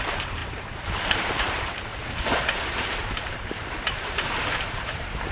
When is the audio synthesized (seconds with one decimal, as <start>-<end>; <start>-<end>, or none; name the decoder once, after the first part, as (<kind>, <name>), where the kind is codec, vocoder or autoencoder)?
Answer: 0.0-1.9 (vocoder, BigVGAN v2); 2.6-5.3